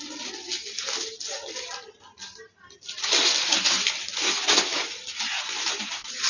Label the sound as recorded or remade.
recorded